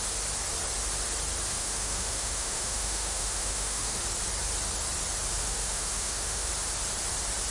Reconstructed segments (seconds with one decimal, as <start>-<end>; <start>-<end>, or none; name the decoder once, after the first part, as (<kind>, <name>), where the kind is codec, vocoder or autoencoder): 1.5-4.0 (autoencoder, DAC-VAE); 5.4-6.5